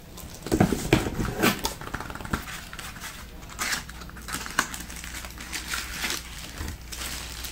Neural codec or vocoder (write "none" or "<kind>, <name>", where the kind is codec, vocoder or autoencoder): none